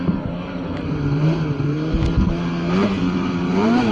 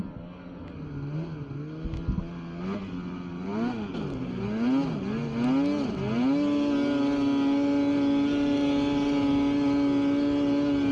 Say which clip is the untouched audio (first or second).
second